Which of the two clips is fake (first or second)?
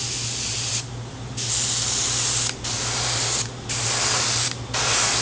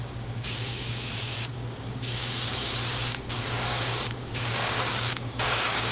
second